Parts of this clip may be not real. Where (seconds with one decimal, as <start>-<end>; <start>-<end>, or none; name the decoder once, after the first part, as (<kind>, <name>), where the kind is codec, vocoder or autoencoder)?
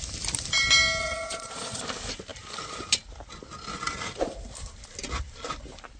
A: 1.0-1.8 (vocoder, Vocos)